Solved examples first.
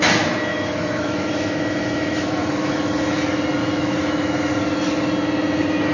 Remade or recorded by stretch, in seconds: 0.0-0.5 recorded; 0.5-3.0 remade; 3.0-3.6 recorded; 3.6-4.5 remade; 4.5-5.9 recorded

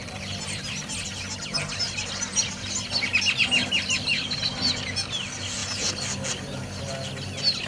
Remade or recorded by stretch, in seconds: 0.0-7.7 recorded

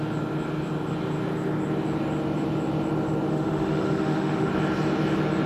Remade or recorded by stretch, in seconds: 0.0-3.3 recorded; 3.3-4.5 remade; 4.5-5.5 recorded

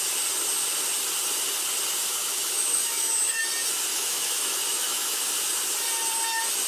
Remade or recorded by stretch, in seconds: 0.0-2.1 recorded; 2.1-3.4 remade; 3.4-3.9 recorded; 3.9-5.3 remade; 5.3-6.7 recorded